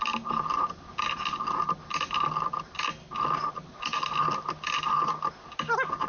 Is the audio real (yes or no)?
yes